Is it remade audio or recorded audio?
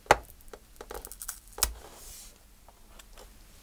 recorded